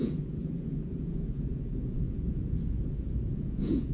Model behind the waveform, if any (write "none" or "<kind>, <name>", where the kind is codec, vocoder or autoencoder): vocoder, Vocos